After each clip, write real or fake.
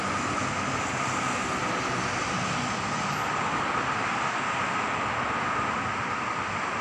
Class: real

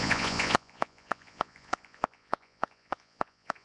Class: fake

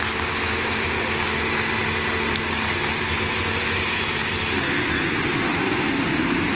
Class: real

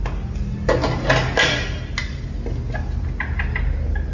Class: real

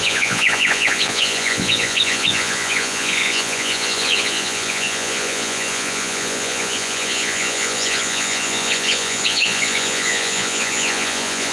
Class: fake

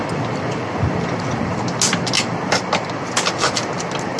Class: real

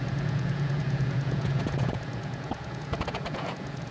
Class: fake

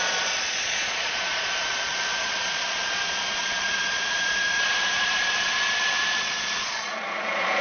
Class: fake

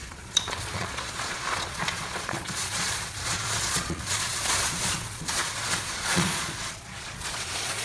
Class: fake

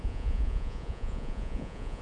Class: fake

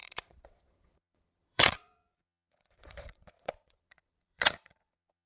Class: fake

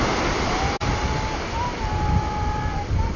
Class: real